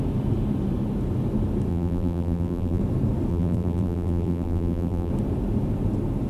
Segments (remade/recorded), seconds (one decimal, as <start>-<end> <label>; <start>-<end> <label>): 0.0-1.7 recorded; 1.7-2.8 remade; 2.8-3.3 recorded; 3.3-5.1 remade; 5.1-6.3 recorded